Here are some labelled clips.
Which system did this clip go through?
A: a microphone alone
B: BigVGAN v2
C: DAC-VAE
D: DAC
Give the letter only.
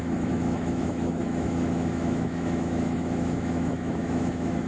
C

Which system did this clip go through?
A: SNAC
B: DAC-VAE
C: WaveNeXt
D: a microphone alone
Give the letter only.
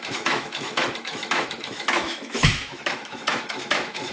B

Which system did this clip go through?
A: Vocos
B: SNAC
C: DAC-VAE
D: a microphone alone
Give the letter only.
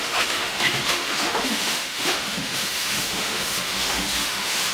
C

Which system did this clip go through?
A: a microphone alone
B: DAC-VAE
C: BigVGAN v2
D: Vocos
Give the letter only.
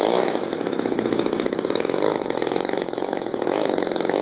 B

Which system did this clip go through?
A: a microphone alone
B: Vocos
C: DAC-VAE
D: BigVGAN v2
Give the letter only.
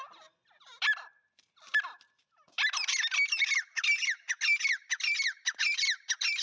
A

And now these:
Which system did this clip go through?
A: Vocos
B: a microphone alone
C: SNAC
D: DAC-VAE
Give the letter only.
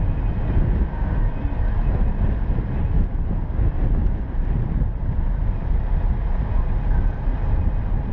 B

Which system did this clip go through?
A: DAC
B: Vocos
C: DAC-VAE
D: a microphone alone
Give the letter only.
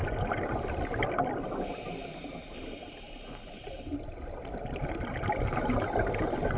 D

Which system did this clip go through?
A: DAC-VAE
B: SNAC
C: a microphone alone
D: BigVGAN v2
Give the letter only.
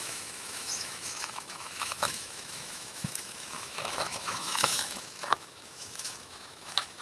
A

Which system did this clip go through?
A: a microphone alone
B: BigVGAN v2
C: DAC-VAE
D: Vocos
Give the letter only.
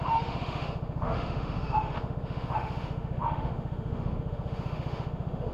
C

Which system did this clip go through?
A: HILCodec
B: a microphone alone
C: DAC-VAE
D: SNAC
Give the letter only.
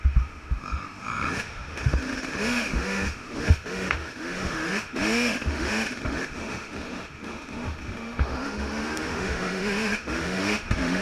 C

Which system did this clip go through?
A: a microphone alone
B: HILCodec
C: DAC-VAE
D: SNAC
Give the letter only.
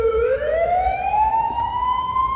C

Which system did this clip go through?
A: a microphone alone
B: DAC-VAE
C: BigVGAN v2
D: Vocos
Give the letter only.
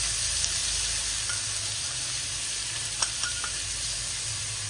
A